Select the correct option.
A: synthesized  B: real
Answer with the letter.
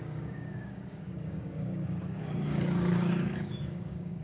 A